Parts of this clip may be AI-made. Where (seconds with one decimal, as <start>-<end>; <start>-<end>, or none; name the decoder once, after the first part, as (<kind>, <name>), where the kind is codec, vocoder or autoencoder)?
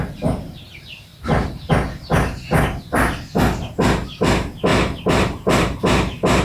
1.1-1.7 (vocoder, BigVGAN v2); 4.7-5.8